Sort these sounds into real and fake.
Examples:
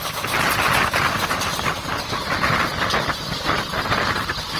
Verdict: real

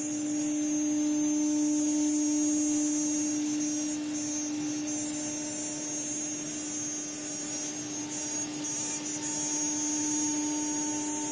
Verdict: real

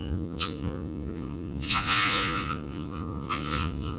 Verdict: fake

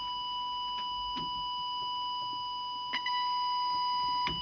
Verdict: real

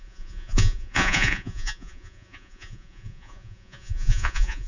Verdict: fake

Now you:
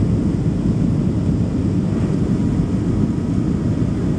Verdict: real